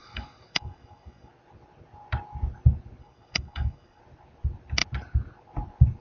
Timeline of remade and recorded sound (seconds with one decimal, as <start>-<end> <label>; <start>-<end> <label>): 0.0-1.3 remade; 1.3-3.0 recorded; 3.0-4.0 remade; 4.0-6.0 recorded